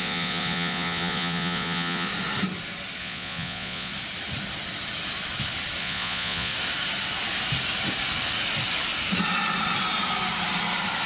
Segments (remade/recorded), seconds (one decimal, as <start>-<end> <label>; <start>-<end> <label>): 0.0-2.1 remade; 2.1-3.0 recorded; 3.0-3.9 remade; 3.9-5.8 recorded; 5.8-6.5 remade; 6.5-11.1 recorded